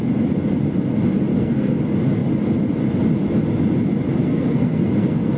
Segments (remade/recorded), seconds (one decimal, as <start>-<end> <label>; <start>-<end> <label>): 0.0-1.3 recorded; 1.3-1.8 remade; 1.8-4.2 recorded; 4.2-5.4 remade